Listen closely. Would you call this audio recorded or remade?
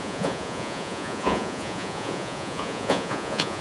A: remade